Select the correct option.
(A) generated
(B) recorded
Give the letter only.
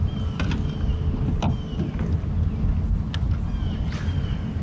B